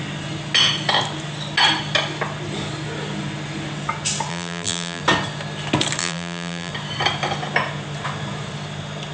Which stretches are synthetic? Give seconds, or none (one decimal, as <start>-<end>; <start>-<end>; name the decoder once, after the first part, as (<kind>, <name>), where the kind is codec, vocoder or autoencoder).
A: 4.3-5.0 (vocoder, BigVGAN v2); 6.0-6.7